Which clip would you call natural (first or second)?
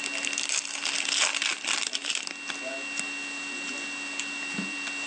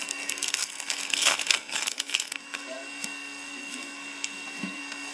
first